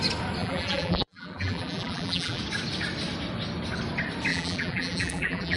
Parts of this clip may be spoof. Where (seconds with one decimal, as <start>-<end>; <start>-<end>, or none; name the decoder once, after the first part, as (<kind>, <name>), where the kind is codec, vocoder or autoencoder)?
0.4-2.4 (vocoder, BigVGAN v2); 4.3-5.6